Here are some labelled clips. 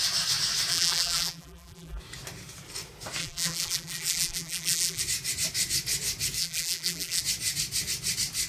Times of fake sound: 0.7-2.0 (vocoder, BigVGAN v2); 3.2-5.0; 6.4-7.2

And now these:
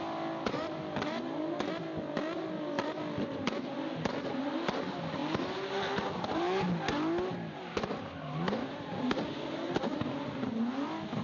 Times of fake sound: none

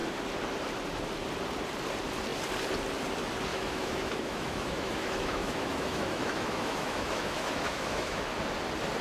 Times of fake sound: 3.5-8.3 (autoencoder, DAC-VAE)

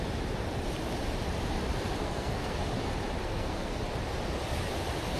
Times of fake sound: 2.0-2.7 (codec, SNAC); 3.2-3.8

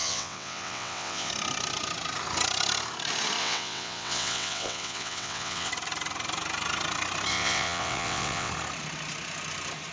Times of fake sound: 0.0-1.3 (vocoder, WaveNeXt); 3.4-5.7; 7.3-8.5